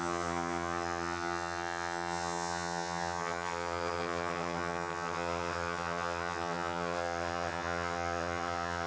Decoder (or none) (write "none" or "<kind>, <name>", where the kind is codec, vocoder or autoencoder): vocoder, HiFi-GAN